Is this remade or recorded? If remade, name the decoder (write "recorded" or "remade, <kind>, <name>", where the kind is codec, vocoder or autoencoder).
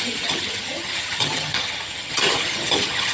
remade, vocoder, HiFi-GAN